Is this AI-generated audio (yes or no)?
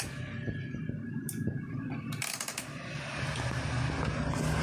no